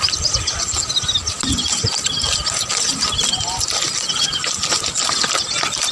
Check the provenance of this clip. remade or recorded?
recorded